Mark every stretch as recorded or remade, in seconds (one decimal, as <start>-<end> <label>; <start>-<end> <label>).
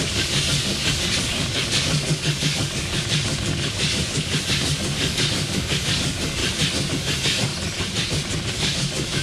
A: 0.0-6.4 remade; 6.4-6.9 recorded; 6.9-7.5 remade; 7.5-8.5 recorded; 8.5-9.2 remade